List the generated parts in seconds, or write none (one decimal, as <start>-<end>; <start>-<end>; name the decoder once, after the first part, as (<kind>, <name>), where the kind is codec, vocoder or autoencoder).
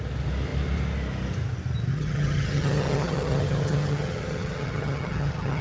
1.9-5.6 (vocoder, HiFi-GAN)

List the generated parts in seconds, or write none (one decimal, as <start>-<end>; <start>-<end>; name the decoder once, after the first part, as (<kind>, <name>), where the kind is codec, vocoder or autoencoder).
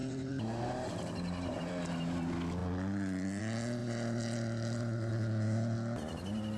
0.0-1.6 (vocoder, BigVGAN v2); 3.8-5.1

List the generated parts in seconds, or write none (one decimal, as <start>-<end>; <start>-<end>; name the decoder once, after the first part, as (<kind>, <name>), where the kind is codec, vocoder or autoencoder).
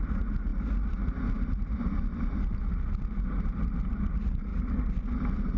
none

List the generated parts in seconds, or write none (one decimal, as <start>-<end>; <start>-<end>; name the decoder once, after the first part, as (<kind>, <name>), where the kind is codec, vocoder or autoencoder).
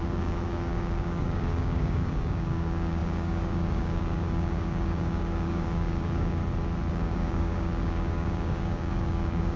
0.0-6.4 (codec, DAC); 6.9-9.6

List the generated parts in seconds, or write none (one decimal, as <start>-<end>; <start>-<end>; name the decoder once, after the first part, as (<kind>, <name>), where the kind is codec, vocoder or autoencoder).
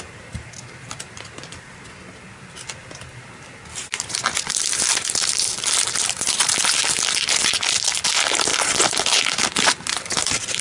2.8-6.3 (vocoder, BigVGAN v2); 8.5-9.5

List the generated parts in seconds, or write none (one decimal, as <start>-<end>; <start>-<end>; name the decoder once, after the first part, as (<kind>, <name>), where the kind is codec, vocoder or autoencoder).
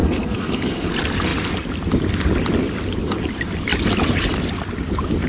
0.0-0.9 (codec, SNAC)